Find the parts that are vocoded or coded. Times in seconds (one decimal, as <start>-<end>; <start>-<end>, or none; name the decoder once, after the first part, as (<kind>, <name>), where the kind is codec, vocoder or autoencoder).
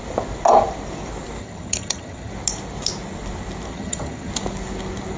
1.4-2.3 (vocoder, HiFi-GAN); 3.7-4.3